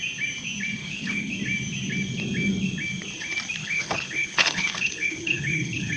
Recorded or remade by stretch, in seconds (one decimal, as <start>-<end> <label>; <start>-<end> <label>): 0.0-0.8 recorded; 0.8-1.3 remade; 1.3-3.6 recorded; 3.6-6.0 remade